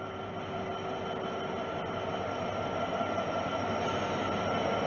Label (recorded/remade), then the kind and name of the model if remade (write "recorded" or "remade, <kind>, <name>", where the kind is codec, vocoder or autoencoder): recorded